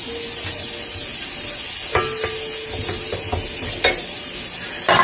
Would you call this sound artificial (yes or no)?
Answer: no